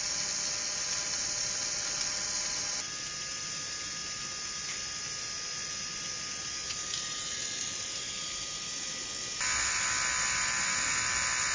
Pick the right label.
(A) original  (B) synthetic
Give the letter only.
A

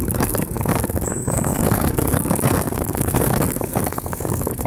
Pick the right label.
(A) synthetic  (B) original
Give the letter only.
A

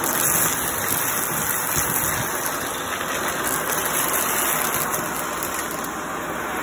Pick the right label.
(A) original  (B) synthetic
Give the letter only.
A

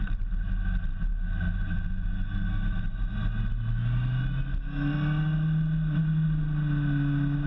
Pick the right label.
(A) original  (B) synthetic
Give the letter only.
A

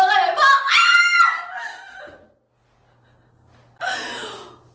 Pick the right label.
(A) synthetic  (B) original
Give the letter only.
B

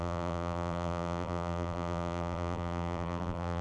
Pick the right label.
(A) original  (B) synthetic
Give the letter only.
B